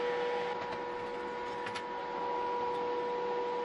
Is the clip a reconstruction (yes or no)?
no